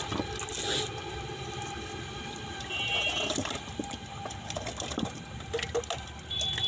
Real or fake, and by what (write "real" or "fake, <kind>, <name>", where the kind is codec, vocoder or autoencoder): real